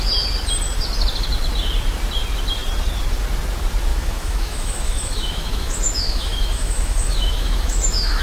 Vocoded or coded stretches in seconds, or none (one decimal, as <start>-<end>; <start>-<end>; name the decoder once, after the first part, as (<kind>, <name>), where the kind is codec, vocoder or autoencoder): 3.9-8.2 (autoencoder, DAC-VAE)